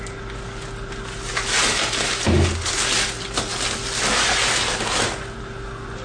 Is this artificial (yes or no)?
no